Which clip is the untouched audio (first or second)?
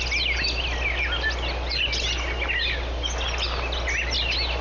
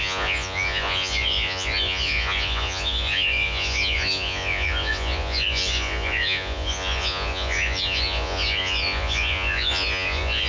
first